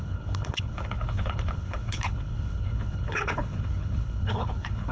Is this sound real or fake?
fake